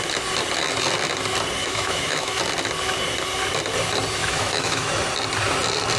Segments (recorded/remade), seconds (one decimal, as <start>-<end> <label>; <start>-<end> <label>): 0.0-1.6 recorded; 1.6-2.4 remade; 2.4-4.2 recorded; 4.2-4.9 remade; 4.9-6.0 recorded